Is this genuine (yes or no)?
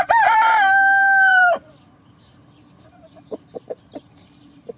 no